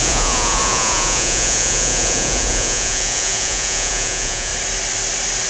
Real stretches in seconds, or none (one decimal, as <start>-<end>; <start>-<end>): 4.5-5.5